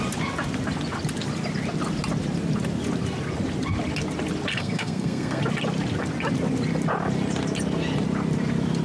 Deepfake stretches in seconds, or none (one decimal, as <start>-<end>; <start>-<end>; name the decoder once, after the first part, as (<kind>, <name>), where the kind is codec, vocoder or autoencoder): 4.5-5.4 (codec, SNAC)